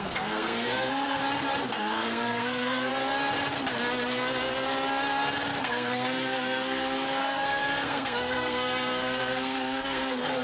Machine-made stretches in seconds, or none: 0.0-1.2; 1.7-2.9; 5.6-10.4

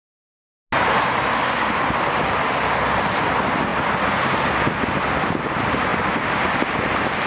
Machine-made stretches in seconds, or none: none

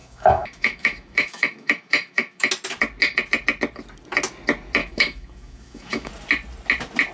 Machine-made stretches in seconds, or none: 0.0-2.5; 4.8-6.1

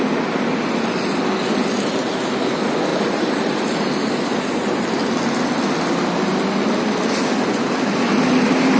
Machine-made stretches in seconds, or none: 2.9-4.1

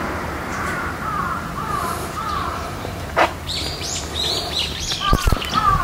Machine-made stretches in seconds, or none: 0.5-4.0